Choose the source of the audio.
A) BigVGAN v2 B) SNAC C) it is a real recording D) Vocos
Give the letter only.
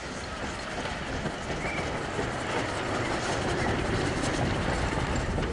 C